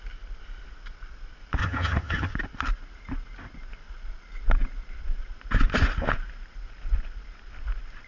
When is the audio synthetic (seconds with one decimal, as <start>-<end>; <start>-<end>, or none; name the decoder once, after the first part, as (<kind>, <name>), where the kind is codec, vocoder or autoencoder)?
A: 1.6-2.3 (vocoder, HiFi-GAN)

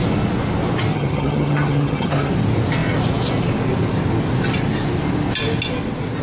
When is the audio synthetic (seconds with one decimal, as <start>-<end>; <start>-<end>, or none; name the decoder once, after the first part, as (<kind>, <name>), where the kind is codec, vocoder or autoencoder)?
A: 0.9-2.3 (vocoder, HiFi-GAN)

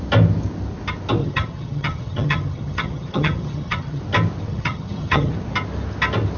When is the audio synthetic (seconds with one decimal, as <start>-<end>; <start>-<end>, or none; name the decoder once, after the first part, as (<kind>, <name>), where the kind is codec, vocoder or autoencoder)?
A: 1.2-4.0 (vocoder, HiFi-GAN); 4.5-5.3

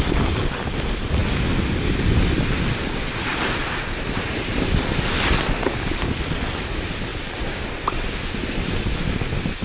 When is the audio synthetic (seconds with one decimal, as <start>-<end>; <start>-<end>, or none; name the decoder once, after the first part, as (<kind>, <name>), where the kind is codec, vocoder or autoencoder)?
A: none

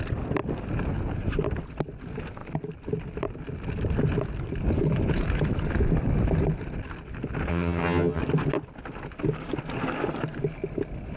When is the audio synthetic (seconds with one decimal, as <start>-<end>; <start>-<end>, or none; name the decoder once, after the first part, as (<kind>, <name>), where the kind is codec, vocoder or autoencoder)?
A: 7.5-8.2 (vocoder, HiFi-GAN)

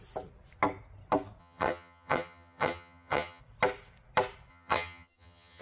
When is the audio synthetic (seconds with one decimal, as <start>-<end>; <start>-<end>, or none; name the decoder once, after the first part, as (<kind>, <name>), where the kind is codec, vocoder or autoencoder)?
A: 1.4-3.4 (vocoder, HiFi-GAN); 4.5-5.6

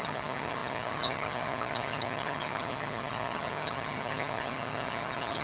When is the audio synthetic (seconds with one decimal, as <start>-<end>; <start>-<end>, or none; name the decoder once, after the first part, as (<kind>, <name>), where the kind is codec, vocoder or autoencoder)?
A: 0.0-5.4 (vocoder, HiFi-GAN)

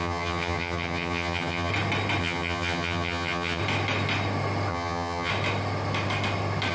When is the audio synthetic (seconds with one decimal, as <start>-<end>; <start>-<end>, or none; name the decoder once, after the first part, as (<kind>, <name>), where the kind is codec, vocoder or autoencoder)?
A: 0.0-1.7 (vocoder, HiFi-GAN); 2.2-3.6; 4.7-5.3